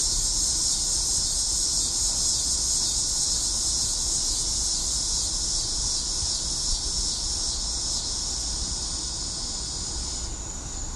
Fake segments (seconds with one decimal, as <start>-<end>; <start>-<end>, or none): 0.0-1.1